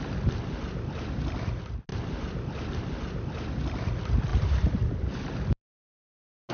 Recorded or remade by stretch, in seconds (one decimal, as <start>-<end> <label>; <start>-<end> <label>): 0.0-1.9 recorded; 1.9-2.8 remade; 2.8-4.3 recorded; 4.3-6.5 remade